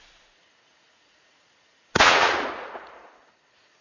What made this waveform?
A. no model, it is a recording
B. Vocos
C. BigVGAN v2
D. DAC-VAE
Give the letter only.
B